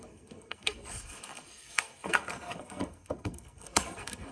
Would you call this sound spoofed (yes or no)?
yes